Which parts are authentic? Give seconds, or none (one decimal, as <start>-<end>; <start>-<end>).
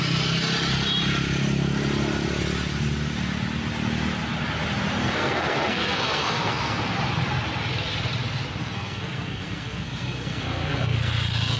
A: 0.0-5.0; 6.8-8.6